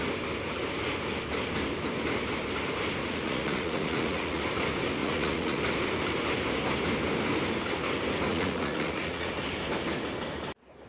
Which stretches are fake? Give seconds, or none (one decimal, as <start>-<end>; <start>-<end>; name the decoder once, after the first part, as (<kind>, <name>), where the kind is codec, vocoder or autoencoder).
3.0-4.4 (vocoder, Vocos); 5.0-5.6; 8.3-9.3